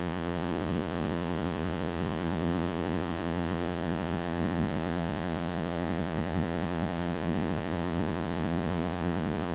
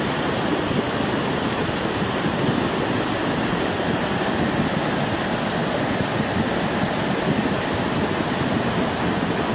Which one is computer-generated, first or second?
first